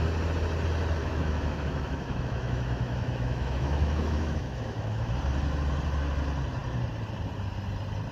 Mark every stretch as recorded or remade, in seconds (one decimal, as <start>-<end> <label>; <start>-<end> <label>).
0.0-1.0 recorded; 1.0-5.1 remade; 5.1-8.1 recorded